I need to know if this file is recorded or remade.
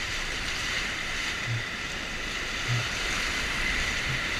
remade